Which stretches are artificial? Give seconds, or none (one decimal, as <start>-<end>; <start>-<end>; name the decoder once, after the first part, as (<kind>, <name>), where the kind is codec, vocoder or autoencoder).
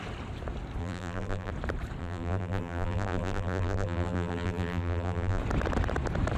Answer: 0.8-1.5 (vocoder, BigVGAN v2); 2.0-5.4